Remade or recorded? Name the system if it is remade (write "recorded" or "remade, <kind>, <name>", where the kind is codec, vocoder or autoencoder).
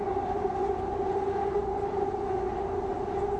recorded